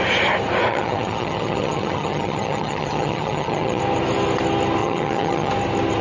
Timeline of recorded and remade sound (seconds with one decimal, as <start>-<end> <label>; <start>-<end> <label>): 0.0-0.7 recorded; 0.7-3.8 remade; 3.8-4.8 recorded; 4.8-5.5 remade; 5.5-6.0 recorded